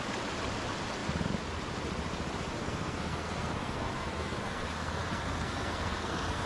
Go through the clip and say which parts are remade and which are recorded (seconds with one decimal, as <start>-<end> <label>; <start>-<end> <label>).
0.0-2.6 recorded; 2.6-6.5 remade